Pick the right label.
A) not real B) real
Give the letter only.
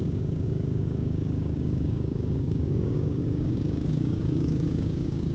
A